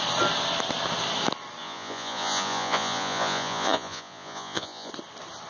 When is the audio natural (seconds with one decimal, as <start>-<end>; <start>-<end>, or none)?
0.0-1.6; 4.9-5.5